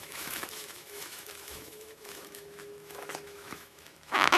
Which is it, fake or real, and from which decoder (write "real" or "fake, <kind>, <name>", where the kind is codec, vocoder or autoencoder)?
fake, autoencoder, DAC-VAE